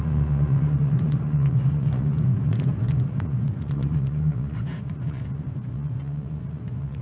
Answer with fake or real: fake